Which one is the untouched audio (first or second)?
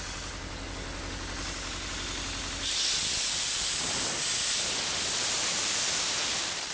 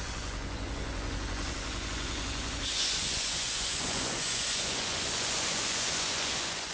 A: first